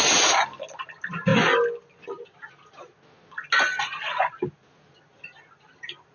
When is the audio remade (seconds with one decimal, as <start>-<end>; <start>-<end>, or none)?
none